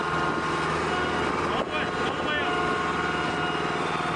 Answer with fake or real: real